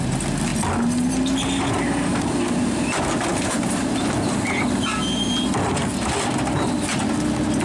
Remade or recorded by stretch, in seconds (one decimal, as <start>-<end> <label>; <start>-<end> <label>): 0.0-7.6 recorded